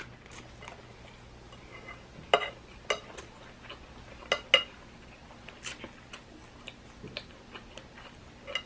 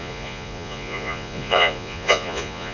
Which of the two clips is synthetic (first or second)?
second